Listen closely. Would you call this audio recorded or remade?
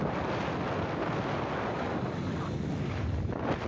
recorded